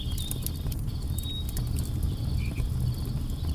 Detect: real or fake real